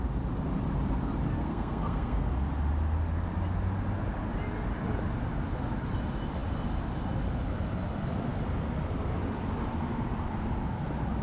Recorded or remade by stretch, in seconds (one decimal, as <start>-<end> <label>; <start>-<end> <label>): 0.0-1.4 recorded; 1.4-2.3 remade; 2.3-11.2 recorded